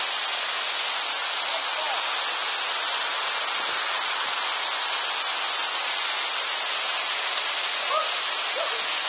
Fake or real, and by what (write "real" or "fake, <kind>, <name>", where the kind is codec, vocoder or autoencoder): real